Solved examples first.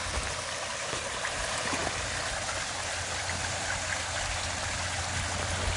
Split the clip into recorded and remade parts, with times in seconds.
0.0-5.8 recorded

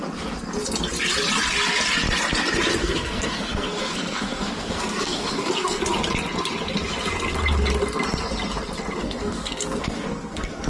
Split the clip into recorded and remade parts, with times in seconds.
0.0-2.8 recorded; 2.8-5.8 remade; 5.8-9.0 recorded; 9.0-10.7 remade

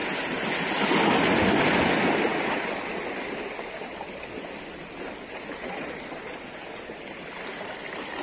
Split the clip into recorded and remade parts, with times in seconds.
0.0-8.2 recorded